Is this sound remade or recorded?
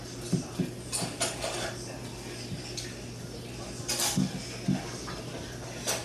recorded